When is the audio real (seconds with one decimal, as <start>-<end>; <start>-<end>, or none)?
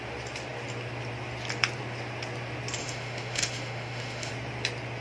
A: 0.0-2.8; 4.3-5.0